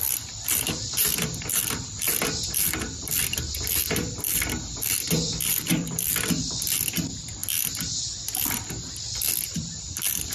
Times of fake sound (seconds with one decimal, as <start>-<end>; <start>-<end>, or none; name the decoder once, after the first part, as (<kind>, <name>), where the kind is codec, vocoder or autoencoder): 0.0-7.4 (vocoder, BigVGAN v2); 8.6-10.3